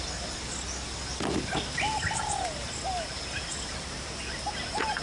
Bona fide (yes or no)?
yes